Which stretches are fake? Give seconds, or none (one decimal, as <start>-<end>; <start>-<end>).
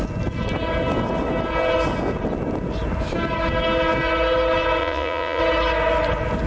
4.8-5.4